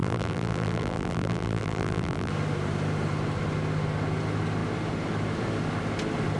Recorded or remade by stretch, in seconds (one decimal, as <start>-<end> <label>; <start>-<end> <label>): 0.0-2.3 remade; 2.3-6.4 recorded